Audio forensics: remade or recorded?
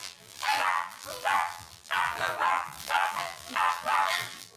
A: remade